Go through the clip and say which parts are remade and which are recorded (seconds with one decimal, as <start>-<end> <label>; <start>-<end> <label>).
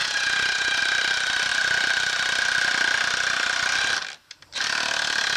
0.0-0.8 remade; 0.8-5.4 recorded